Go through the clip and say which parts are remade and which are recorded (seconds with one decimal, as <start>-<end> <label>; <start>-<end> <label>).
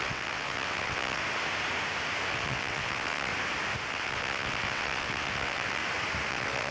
0.0-1.2 remade; 1.2-2.3 recorded; 2.3-3.3 remade; 3.3-3.9 recorded; 3.9-5.8 remade; 5.8-6.3 recorded; 6.3-6.7 remade